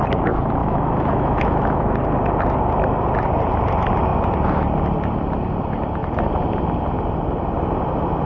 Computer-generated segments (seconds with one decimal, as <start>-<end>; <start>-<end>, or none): 0.6-1.9